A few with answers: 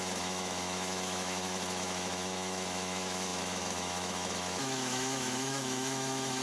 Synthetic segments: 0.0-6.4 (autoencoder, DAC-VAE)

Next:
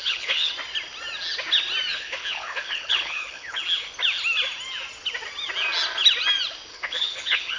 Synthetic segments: 0.0-0.5 (codec, HILCodec); 1.9-3.6; 6.7-7.6

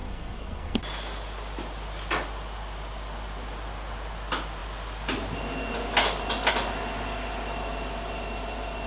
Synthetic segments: 0.0-0.8 (codec, SNAC)

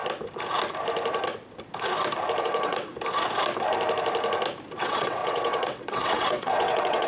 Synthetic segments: 2.4-2.9 (vocoder, WaveNeXt); 4.8-7.1

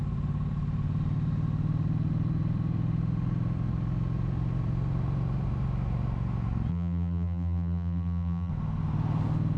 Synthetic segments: 6.7-8.5 (vocoder, BigVGAN v2)

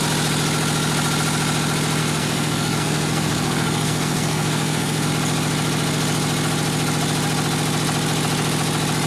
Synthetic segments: 2.0-5.1 (codec, SNAC)